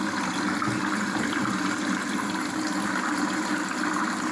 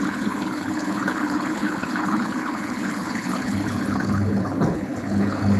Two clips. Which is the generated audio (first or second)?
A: second